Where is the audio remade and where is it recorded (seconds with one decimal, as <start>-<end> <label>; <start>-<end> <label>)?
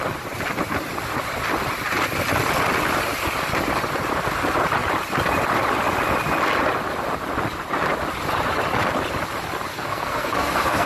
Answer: 0.0-9.7 recorded; 9.7-10.9 remade